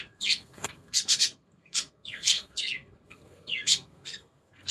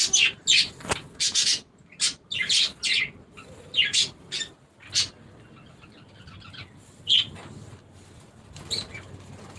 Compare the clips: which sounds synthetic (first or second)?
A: first